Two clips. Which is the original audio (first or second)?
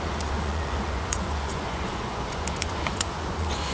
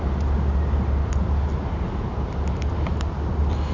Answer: second